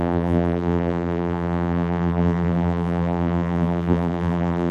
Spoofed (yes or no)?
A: yes